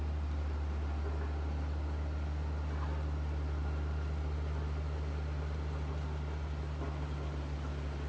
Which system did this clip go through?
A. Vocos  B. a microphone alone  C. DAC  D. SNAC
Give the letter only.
B